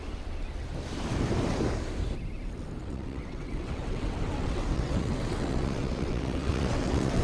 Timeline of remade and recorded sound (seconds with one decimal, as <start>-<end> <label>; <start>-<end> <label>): 0.0-2.8 recorded; 2.8-7.2 remade